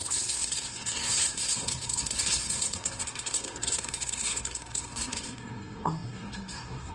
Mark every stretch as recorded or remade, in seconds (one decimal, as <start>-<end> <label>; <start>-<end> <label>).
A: 0.0-6.9 remade